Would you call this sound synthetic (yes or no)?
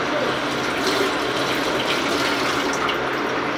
no